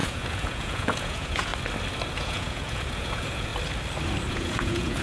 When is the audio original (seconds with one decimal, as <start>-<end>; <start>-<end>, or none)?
1.5-2.1; 3.5-4.3